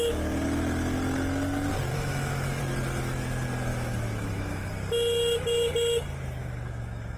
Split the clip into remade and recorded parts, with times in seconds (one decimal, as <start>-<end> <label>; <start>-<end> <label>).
0.0-1.9 recorded; 1.9-2.6 remade; 2.6-3.7 recorded; 3.7-4.7 remade; 4.7-6.4 recorded; 6.4-7.2 remade